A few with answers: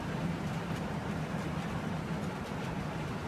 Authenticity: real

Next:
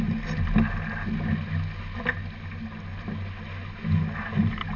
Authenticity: real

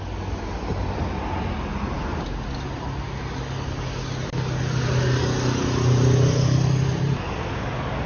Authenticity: real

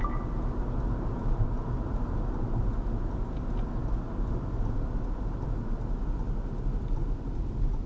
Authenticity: real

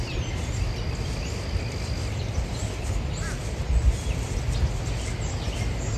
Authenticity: real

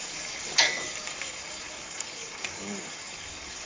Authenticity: fake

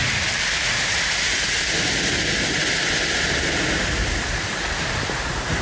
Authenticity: real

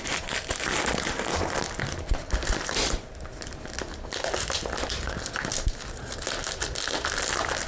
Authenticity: real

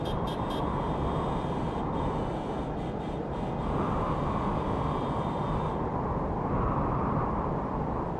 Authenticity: fake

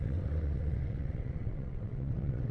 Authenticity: fake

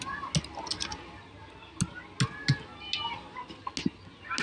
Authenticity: real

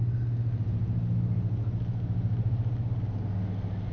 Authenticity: real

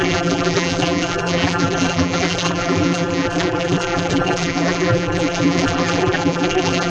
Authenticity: fake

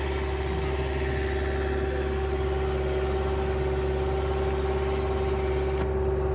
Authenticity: real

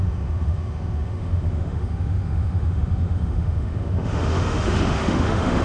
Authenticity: fake